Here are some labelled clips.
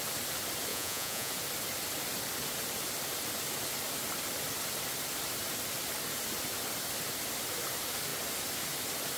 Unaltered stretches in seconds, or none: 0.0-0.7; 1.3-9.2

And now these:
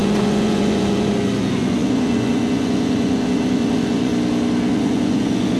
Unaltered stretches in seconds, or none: 4.1-4.7

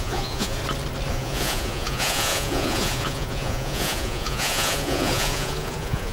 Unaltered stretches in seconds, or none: 0.6-1.1

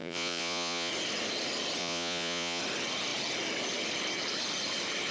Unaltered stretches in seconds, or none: 0.9-1.8; 2.6-5.1